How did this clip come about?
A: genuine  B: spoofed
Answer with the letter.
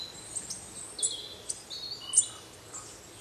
A